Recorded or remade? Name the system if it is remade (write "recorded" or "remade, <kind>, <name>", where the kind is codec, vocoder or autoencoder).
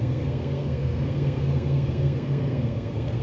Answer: remade, codec, SNAC